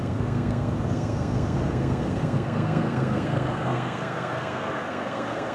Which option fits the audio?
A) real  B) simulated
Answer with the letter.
B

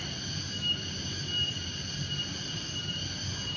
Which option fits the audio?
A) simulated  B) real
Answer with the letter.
B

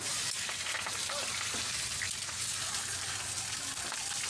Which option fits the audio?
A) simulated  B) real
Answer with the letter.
B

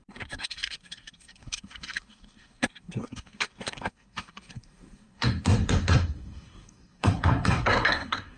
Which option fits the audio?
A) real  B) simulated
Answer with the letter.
B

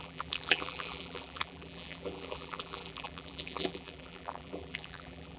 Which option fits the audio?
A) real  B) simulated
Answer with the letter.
B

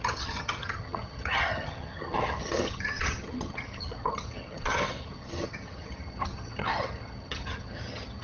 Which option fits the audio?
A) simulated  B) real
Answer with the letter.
A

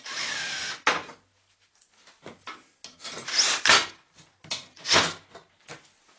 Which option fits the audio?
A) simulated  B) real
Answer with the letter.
B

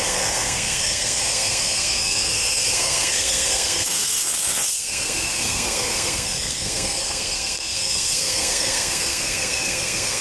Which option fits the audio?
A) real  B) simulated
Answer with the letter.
B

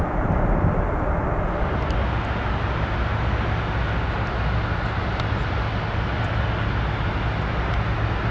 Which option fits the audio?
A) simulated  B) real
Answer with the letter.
B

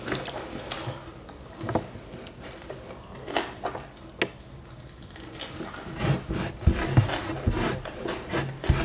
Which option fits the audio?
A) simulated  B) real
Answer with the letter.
B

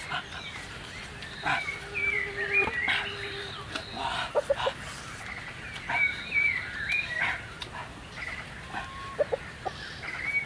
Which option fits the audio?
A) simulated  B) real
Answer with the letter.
B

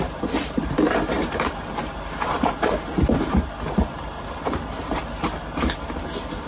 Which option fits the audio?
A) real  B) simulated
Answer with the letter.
B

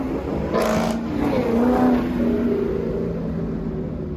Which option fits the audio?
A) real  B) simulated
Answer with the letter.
A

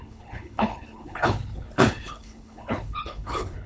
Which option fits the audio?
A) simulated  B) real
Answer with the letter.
A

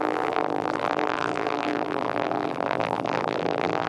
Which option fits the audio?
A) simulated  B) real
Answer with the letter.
A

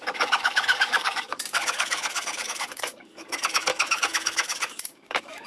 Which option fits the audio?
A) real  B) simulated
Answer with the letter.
B